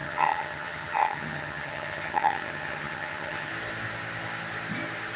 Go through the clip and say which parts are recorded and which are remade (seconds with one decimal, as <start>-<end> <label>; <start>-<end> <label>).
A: 0.0-3.5 remade; 3.5-5.2 recorded